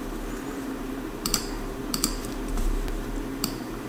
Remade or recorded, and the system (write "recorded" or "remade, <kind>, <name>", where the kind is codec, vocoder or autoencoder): remade, vocoder, BigVGAN v2